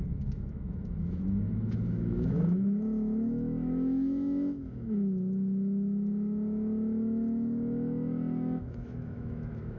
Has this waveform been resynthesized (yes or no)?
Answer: yes